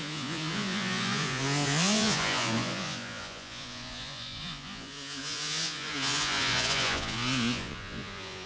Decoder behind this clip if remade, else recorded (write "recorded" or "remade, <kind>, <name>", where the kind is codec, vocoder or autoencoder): remade, vocoder, Vocos